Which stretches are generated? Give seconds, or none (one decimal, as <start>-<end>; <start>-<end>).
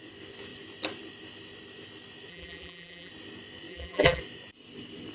2.3-3.1; 3.7-4.2